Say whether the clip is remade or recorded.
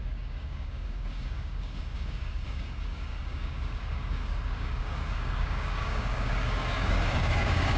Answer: remade